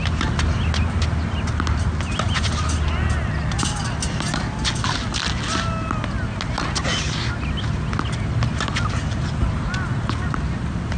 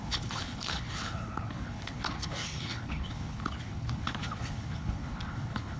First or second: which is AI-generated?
second